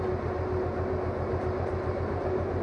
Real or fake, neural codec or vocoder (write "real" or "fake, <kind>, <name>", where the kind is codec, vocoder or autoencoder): real